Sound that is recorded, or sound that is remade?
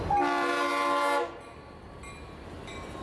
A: recorded